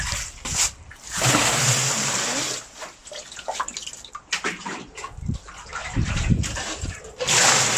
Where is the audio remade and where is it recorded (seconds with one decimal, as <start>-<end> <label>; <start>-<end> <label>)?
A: 0.0-1.8 recorded; 1.8-2.6 remade; 2.6-5.8 recorded; 5.8-7.2 remade; 7.2-7.8 recorded

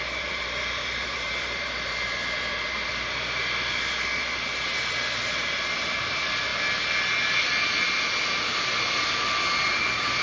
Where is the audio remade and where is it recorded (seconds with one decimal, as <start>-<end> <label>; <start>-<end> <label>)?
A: 0.0-6.5 remade; 6.5-7.4 recorded; 7.4-10.2 remade